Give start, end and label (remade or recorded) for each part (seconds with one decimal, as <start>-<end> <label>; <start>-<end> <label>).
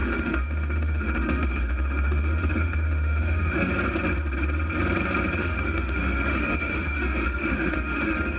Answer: 0.0-3.7 remade; 3.7-5.4 recorded; 5.4-8.4 remade